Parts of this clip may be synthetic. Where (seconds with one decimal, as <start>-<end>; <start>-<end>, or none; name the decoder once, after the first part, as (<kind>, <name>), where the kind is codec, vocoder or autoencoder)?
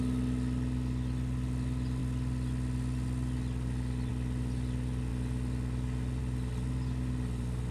none